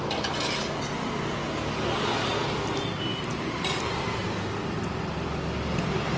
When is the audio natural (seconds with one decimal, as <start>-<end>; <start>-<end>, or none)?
0.0-3.1; 4.0-6.2

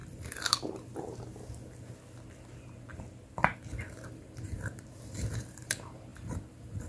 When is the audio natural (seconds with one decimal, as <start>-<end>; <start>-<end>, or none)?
0.0-4.1

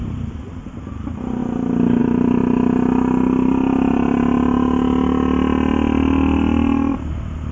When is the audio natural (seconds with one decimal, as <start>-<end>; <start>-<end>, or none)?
1.4-2.0; 2.4-6.9

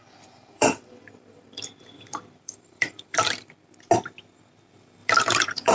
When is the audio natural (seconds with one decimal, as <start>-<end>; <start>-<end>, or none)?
3.3-5.0

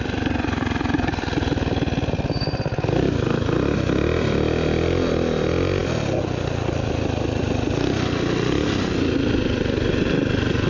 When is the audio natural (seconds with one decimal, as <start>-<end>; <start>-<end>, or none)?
0.0-10.7

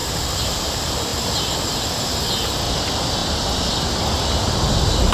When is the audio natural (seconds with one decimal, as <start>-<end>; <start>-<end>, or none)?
0.7-3.2; 4.0-5.1

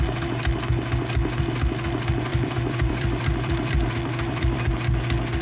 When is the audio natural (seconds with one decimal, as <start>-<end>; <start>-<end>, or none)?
0.0-2.3; 4.7-5.4